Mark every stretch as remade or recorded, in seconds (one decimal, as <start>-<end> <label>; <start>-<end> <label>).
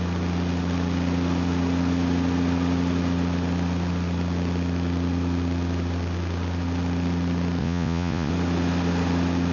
0.0-7.6 recorded; 7.6-8.3 remade; 8.3-9.5 recorded